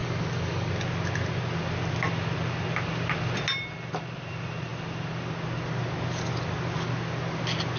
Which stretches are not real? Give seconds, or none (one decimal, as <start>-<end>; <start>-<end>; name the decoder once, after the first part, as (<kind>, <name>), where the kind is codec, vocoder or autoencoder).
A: 0.0-0.7 (codec, DAC)